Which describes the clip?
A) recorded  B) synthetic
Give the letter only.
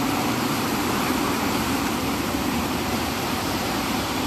B